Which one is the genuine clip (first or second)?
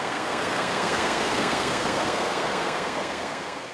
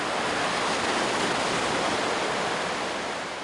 second